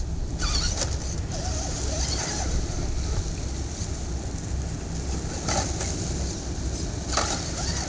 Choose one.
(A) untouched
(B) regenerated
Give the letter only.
A